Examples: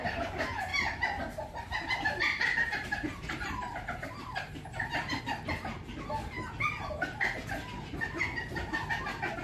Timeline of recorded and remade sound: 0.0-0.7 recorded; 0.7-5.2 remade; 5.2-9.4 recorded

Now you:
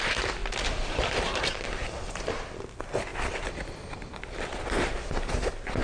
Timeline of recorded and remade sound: 0.0-5.8 recorded

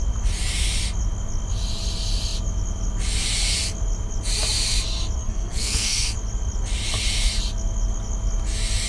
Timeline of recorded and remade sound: 0.0-5.2 recorded; 5.2-6.1 remade; 6.1-8.9 recorded

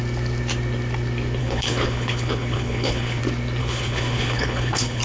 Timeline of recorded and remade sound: 0.0-1.4 recorded; 1.4-3.2 remade; 3.2-3.6 recorded; 3.6-5.0 remade

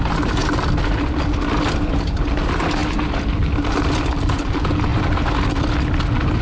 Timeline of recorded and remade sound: 0.0-6.4 recorded

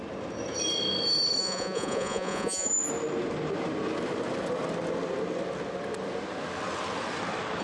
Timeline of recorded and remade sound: 0.0-1.4 recorded; 1.4-2.7 remade; 2.7-7.6 recorded